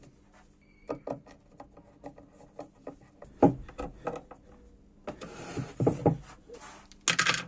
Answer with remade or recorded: recorded